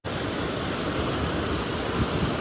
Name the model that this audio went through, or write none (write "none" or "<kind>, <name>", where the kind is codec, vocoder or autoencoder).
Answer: none